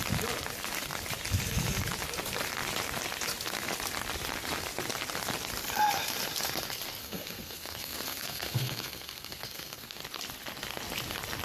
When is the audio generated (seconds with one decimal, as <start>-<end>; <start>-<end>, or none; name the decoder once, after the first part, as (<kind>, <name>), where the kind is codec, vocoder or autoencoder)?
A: 7.0-10.0 (codec, SNAC)

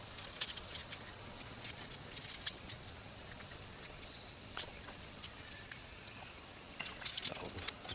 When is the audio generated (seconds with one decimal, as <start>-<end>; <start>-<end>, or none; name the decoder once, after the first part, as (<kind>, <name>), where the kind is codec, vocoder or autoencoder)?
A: 0.0-7.9 (vocoder, WaveNeXt)